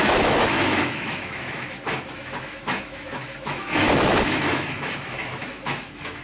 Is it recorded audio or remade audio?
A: remade